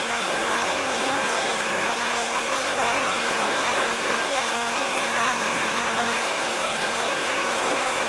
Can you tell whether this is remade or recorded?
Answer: remade